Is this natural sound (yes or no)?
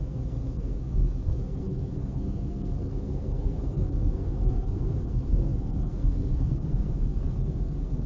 no